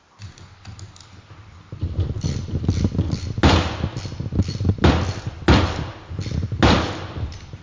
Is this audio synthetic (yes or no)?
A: no